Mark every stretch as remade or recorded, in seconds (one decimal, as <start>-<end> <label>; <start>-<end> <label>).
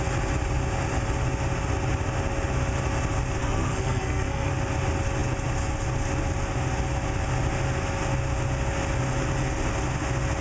0.0-3.4 recorded; 3.4-4.5 remade; 4.5-10.4 recorded